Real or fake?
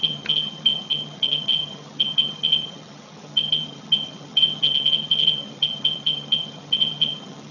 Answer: fake